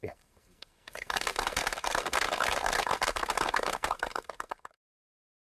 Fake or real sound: fake